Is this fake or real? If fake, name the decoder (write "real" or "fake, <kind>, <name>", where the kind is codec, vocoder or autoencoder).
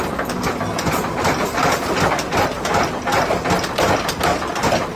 real